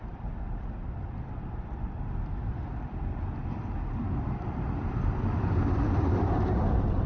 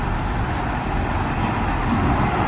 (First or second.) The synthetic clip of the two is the first